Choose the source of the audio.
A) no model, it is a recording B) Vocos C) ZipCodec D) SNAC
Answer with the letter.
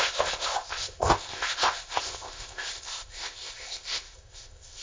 C